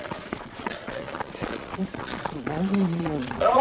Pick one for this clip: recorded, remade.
remade